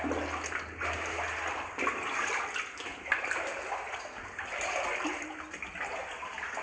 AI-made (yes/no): no